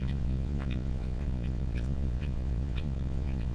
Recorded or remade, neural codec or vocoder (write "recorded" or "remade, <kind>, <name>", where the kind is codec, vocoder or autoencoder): remade, vocoder, Vocos